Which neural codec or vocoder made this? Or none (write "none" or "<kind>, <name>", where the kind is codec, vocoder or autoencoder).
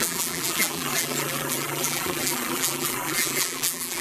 vocoder, BigVGAN v2